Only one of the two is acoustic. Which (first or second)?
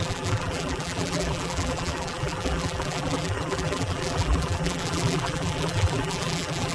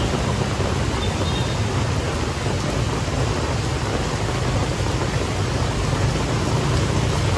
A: second